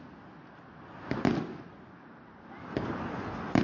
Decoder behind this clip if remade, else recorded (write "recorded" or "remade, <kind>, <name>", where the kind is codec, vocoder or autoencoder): recorded